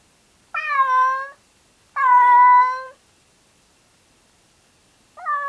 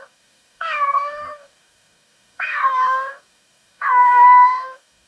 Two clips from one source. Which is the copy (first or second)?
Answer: second